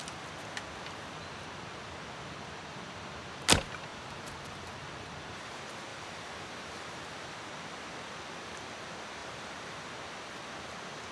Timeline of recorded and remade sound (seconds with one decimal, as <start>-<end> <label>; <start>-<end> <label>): 0.0-3.9 recorded; 3.9-5.5 remade; 5.5-5.9 recorded; 5.9-7.3 remade; 7.3-9.2 recorded; 9.2-9.9 remade; 9.9-11.1 recorded